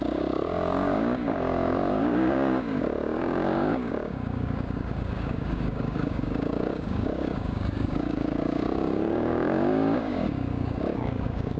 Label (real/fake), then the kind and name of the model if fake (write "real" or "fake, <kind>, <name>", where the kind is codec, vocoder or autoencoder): fake, codec, DAC